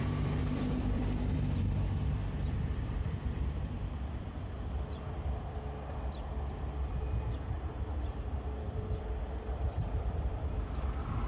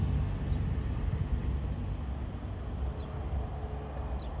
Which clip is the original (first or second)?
second